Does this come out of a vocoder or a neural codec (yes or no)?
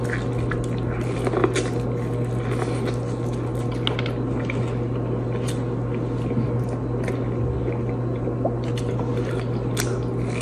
no